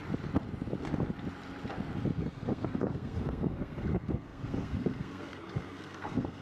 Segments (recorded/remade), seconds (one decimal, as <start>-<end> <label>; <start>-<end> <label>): 0.0-2.2 recorded; 2.2-6.4 remade